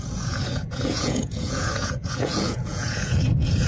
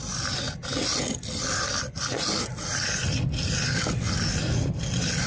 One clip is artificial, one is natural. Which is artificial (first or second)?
first